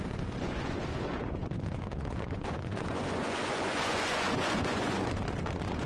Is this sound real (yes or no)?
no